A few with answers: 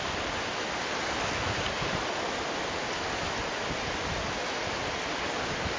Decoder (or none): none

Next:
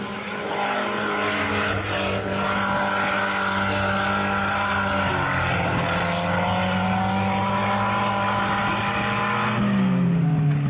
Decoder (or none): none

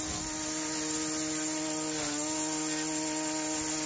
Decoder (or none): none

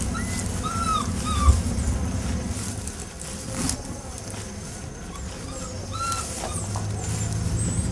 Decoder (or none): none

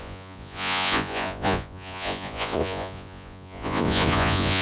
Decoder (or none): vocoder, Vocos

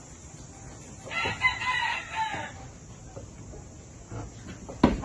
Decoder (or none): none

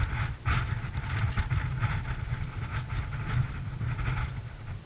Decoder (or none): none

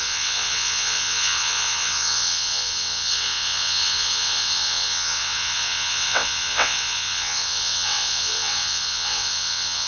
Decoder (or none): vocoder, WaveNeXt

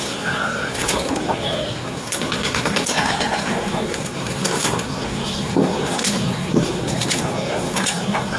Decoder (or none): codec, SNAC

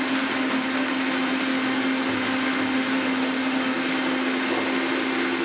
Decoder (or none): none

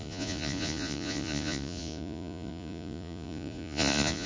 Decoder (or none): vocoder, Vocos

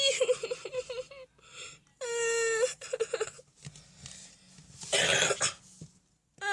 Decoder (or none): none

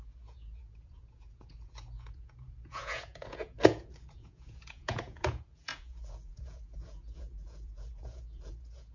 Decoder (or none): vocoder, Vocos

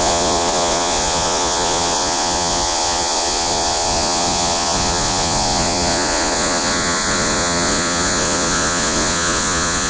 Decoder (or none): vocoder, Vocos